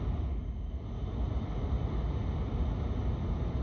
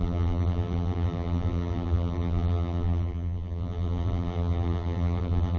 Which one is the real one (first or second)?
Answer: first